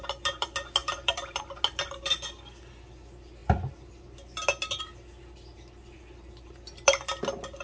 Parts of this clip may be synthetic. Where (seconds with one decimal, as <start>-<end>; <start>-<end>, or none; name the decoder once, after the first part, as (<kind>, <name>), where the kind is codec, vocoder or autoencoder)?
0.8-1.4 (vocoder, BigVGAN v2)